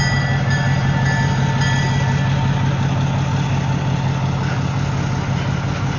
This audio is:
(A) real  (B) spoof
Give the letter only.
A